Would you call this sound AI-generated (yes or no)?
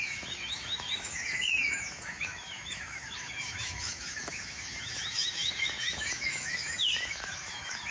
yes